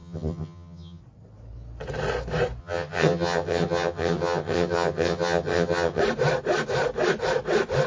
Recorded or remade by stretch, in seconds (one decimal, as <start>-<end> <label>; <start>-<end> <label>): 0.0-1.0 remade; 1.0-2.6 recorded; 2.6-6.0 remade; 6.0-7.9 recorded